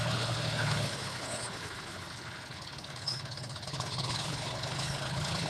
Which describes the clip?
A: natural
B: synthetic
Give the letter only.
B